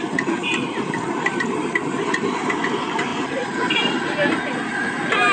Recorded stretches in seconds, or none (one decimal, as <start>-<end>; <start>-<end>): 0.4-1.2; 3.1-3.7